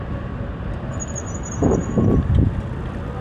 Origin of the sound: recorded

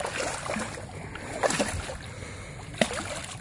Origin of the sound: recorded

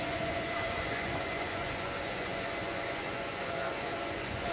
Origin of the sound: remade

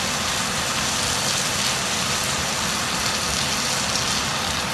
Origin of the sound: recorded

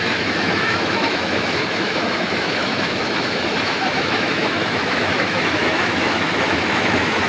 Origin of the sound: remade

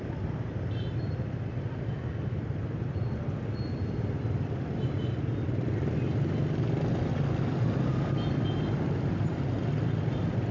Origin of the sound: recorded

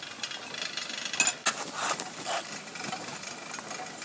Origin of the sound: recorded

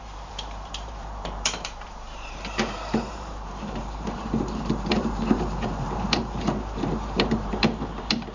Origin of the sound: remade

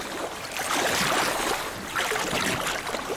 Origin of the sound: recorded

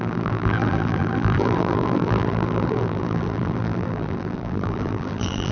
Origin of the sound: remade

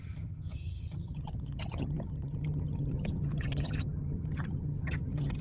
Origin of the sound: remade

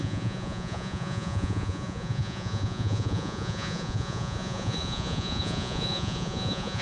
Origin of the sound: remade